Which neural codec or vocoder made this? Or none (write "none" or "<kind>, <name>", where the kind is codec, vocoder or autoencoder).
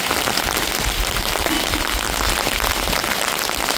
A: none